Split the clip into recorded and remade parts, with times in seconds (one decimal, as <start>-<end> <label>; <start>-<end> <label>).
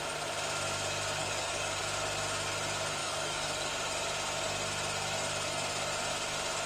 0.0-1.2 recorded; 1.2-1.8 remade; 1.8-3.0 recorded; 3.0-3.7 remade; 3.7-6.7 recorded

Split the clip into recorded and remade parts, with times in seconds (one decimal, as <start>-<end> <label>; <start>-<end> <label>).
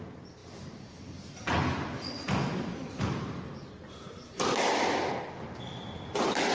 0.0-6.5 recorded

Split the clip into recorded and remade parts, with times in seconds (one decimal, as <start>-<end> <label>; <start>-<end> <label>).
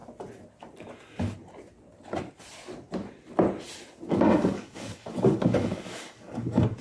0.0-4.1 recorded; 4.1-6.8 remade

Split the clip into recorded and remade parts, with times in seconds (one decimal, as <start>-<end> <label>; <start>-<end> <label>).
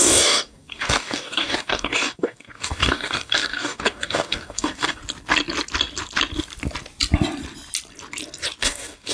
0.0-5.0 remade; 5.0-8.6 recorded; 8.6-9.1 remade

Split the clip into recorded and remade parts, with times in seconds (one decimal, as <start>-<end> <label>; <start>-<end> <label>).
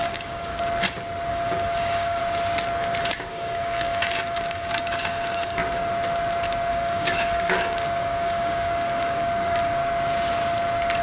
0.0-0.5 remade; 0.5-1.3 recorded; 1.3-2.2 remade; 2.2-3.3 recorded; 3.3-5.6 remade; 5.6-6.7 recorded; 6.7-9.8 remade; 9.8-11.0 recorded